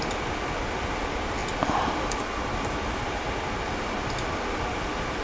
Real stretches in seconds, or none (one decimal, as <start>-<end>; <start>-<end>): 0.0-5.2